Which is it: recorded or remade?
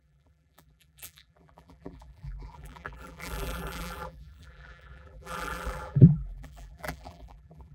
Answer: remade